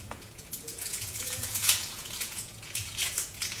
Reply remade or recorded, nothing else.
remade